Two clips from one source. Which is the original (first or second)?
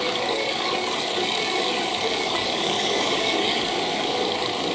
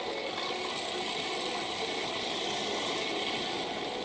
second